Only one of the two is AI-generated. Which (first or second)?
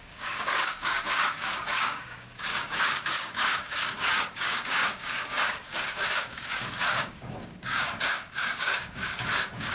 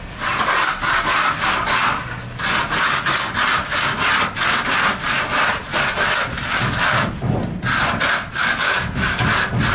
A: first